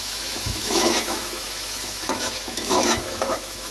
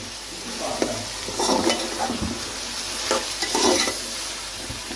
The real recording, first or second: second